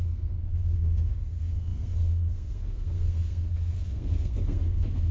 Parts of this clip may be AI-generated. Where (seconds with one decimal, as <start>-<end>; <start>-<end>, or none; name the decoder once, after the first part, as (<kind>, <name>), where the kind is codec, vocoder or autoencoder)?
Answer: 0.0-5.1 (codec, SNAC)